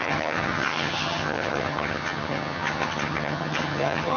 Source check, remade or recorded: remade